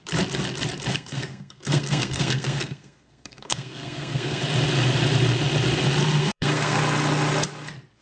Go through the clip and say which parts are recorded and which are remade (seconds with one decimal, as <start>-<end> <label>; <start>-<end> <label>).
0.0-0.9 recorded; 0.9-4.4 remade; 4.4-6.2 recorded; 6.2-6.8 remade; 6.8-8.0 recorded

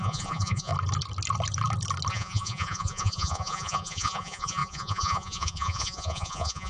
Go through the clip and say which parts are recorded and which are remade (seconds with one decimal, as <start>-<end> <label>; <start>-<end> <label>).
0.0-0.7 remade; 0.7-2.1 recorded; 2.1-6.7 remade

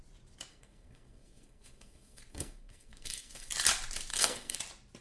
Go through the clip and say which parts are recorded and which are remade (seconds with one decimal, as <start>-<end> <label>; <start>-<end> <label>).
0.0-0.5 recorded; 0.5-3.5 remade; 3.5-4.1 recorded; 4.1-4.6 remade; 4.6-5.0 recorded

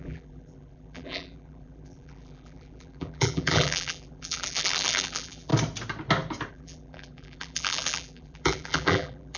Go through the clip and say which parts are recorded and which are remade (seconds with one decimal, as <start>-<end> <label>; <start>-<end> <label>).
0.0-5.5 remade; 5.5-6.5 recorded; 6.5-9.4 remade

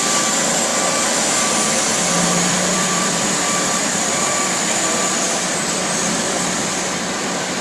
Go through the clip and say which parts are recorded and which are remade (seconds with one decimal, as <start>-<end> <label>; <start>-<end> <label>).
0.0-0.7 remade; 0.7-1.3 recorded; 1.3-7.6 remade

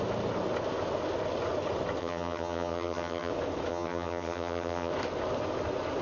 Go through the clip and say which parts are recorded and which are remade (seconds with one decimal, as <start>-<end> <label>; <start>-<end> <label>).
0.0-2.0 recorded; 2.0-3.3 remade; 3.3-3.7 recorded; 3.7-4.9 remade; 4.9-6.0 recorded

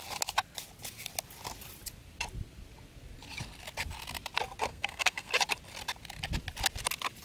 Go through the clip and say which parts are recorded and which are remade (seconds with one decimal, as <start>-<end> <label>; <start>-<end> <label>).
0.0-4.7 recorded; 4.7-5.3 remade; 5.3-7.2 recorded